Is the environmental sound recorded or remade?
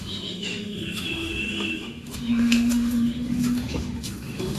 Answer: remade